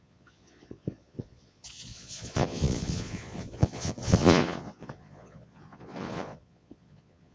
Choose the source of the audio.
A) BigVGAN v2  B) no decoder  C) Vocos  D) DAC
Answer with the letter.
C